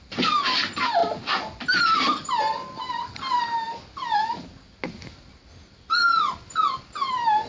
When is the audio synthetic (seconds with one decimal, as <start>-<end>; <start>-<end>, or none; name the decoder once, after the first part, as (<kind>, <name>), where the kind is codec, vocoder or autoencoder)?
none